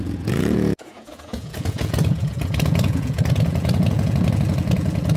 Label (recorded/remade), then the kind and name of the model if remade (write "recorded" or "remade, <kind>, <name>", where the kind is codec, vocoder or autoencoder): remade, vocoder, Vocos